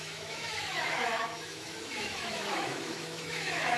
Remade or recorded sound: remade